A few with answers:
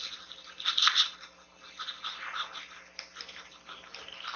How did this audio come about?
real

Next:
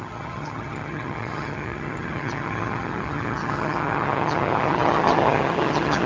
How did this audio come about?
fake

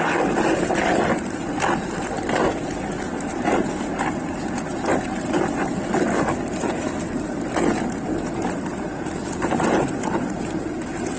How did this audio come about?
real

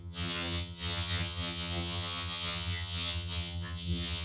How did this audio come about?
fake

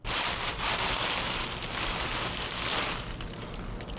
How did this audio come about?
real